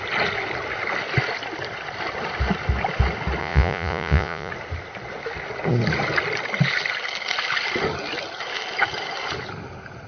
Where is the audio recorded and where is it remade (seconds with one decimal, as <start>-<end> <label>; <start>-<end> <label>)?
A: 0.0-3.4 recorded; 3.4-4.5 remade; 4.5-10.1 recorded

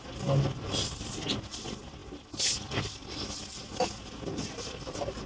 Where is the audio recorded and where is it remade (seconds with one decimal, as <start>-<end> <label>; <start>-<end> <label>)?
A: 0.0-5.3 recorded

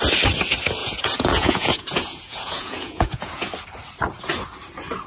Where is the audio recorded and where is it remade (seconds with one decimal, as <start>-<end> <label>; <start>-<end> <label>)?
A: 0.0-0.8 recorded; 0.8-3.5 remade; 3.5-5.1 recorded

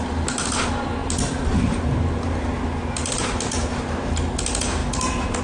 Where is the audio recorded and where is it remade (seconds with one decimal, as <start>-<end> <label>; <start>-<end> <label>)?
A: 0.0-5.4 recorded